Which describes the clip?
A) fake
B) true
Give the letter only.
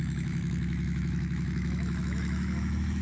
A